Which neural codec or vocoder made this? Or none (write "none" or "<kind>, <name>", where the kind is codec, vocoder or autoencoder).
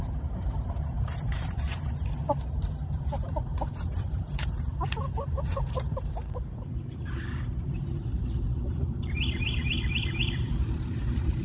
vocoder, BigVGAN v2